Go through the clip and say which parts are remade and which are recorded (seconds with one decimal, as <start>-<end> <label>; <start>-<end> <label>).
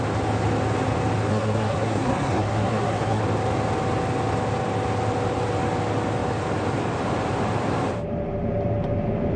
0.0-1.3 recorded; 1.3-3.2 remade; 3.2-9.4 recorded